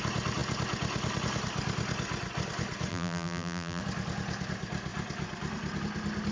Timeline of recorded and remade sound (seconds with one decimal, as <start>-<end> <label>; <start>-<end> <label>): 0.0-2.9 recorded; 2.9-3.8 remade; 3.8-6.3 recorded